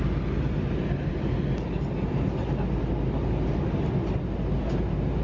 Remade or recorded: recorded